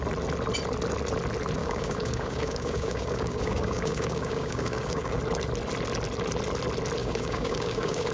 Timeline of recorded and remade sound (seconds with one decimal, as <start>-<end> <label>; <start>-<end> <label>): 0.0-1.6 recorded; 1.6-5.2 remade; 5.2-7.0 recorded; 7.0-8.1 remade